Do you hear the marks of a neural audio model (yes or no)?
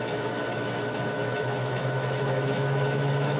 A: yes